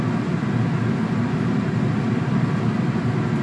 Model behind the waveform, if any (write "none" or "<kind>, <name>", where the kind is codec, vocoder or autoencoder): none